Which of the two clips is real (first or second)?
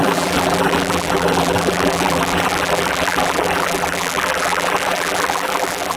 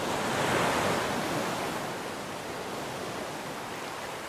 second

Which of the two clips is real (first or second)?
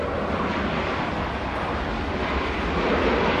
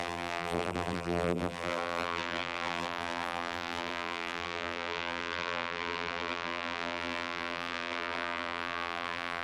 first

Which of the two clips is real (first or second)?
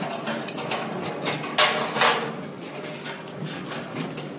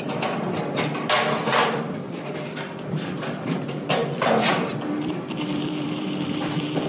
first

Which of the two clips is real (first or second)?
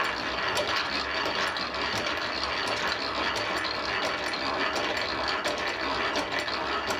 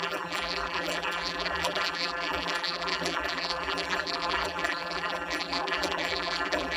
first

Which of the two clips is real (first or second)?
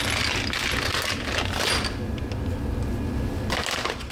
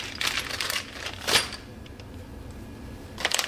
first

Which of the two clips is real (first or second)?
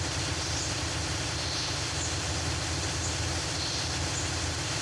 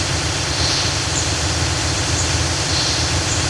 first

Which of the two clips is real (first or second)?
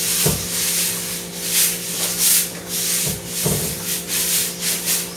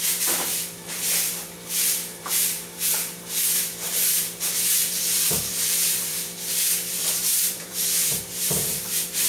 first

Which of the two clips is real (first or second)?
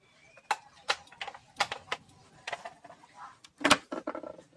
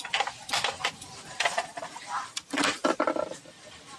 first